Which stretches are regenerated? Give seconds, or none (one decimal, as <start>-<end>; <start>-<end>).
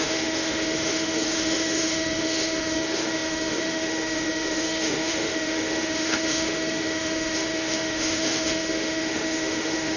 0.0-10.0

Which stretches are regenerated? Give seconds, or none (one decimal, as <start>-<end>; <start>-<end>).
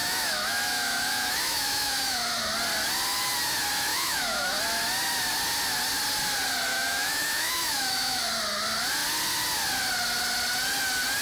0.0-2.4; 3.9-4.6; 6.7-8.3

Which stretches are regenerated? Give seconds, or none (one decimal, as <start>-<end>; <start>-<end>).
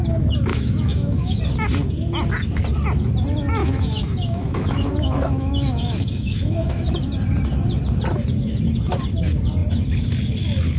0.5-1.4; 3.6-6.9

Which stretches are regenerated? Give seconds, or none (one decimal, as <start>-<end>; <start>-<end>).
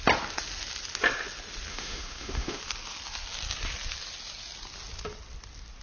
1.7-2.6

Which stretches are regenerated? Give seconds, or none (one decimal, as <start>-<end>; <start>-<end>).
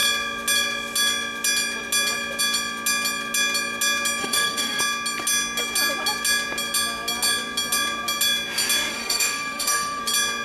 4.2-4.8; 8.9-10.0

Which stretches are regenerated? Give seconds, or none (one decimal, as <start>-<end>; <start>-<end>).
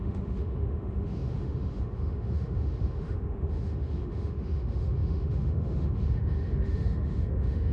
0.0-7.7